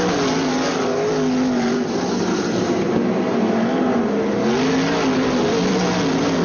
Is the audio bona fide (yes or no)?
yes